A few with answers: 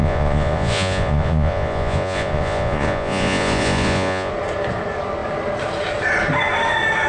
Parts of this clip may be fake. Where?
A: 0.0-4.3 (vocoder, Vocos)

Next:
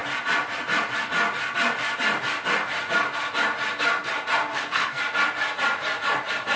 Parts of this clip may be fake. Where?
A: 4.5-5.0 (codec, SNAC)